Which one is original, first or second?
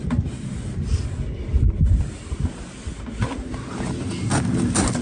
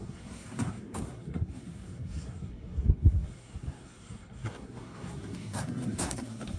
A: first